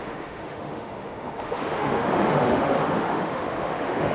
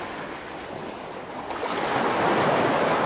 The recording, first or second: second